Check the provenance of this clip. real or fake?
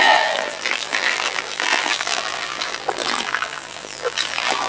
fake